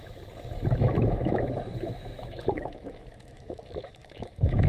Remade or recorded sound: remade